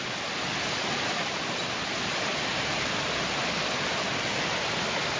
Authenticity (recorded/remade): recorded